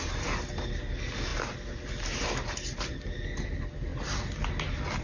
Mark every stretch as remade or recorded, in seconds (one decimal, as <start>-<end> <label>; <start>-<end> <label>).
0.0-1.3 recorded; 1.3-1.9 remade; 1.9-3.9 recorded; 3.9-4.5 remade; 4.5-5.0 recorded